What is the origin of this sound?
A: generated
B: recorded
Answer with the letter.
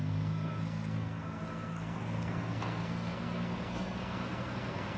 A